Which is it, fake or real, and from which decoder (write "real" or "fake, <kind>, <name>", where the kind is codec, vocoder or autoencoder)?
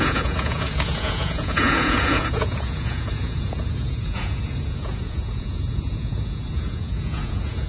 fake, vocoder, Vocos